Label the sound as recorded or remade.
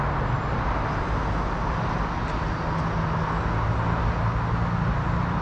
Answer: recorded